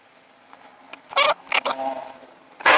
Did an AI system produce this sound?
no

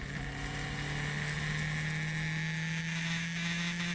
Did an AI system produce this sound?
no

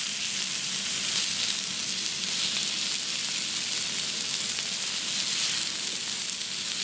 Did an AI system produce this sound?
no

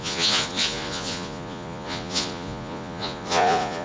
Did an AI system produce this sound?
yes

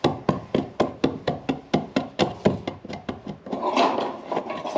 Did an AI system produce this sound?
no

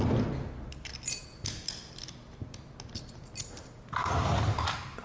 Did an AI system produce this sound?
no